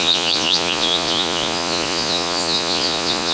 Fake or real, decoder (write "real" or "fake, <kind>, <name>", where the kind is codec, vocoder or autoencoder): fake, vocoder, Vocos